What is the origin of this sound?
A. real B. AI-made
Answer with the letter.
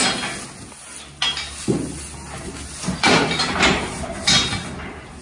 A